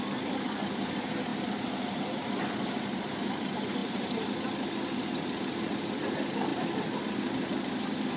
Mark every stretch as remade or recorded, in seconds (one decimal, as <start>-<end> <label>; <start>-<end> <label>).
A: 0.0-1.3 recorded; 1.3-2.4 remade; 2.4-8.2 recorded